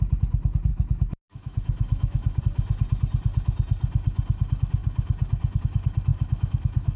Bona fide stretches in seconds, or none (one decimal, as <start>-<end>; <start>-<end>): 0.0-0.7; 2.4-6.1